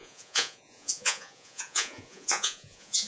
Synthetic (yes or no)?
yes